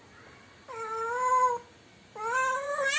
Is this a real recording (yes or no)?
yes